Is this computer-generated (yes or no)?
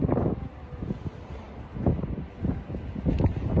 no